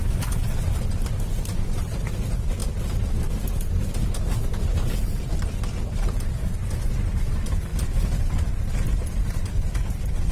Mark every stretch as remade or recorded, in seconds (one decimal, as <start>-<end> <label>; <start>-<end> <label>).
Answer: 0.0-0.9 recorded; 0.9-2.6 remade; 2.6-5.0 recorded; 5.0-10.3 remade